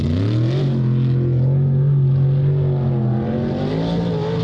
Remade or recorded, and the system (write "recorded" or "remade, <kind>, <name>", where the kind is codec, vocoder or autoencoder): recorded